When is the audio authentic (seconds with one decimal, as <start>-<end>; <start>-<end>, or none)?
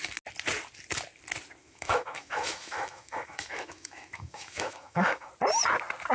0.0-1.6; 5.3-6.1